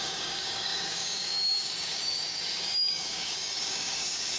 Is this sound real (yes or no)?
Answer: no